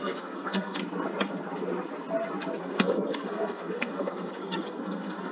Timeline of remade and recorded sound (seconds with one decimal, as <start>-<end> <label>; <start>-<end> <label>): 0.0-0.8 remade; 0.8-2.6 recorded; 2.6-5.3 remade